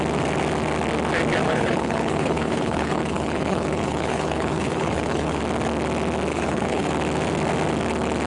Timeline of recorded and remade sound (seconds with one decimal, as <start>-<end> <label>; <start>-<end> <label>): 0.0-1.5 recorded; 1.5-5.4 remade; 5.4-6.3 recorded; 6.3-6.9 remade; 6.9-8.3 recorded